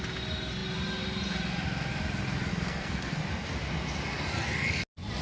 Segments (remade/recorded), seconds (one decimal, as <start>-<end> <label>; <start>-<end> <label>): 0.0-2.5 recorded; 2.5-3.2 remade; 3.2-5.2 recorded

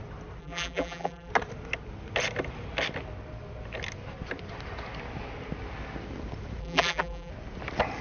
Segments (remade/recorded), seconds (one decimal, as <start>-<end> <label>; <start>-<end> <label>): 0.0-0.4 recorded; 0.4-1.3 remade; 1.3-6.6 recorded; 6.6-7.3 remade; 7.3-8.0 recorded

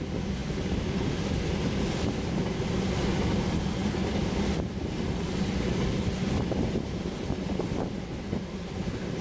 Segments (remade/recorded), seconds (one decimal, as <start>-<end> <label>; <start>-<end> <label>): 0.0-9.2 recorded

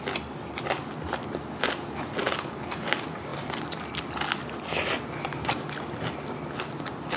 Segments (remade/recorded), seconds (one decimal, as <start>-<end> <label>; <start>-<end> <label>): 0.0-7.2 recorded

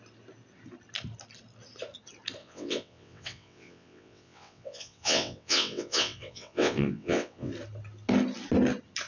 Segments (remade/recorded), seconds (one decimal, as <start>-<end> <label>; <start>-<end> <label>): 0.0-2.4 recorded; 2.4-7.5 remade; 7.5-9.1 recorded

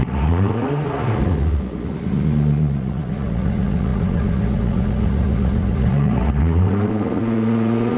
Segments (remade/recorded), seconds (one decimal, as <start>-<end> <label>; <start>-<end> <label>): 0.0-8.0 remade

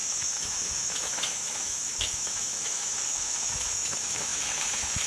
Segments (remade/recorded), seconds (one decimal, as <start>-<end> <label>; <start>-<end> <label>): 0.0-5.1 remade

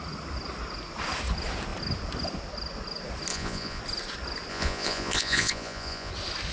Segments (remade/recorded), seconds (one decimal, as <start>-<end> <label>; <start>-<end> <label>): 0.0-3.3 recorded; 3.3-3.8 remade; 3.8-4.5 recorded; 4.5-6.1 remade; 6.1-6.5 recorded